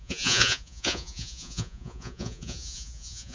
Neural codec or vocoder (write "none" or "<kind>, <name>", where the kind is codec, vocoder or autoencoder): vocoder, Vocos